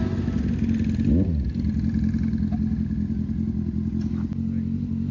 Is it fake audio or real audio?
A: real